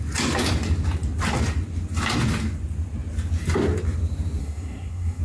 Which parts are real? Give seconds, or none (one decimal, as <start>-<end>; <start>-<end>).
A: 0.0-4.4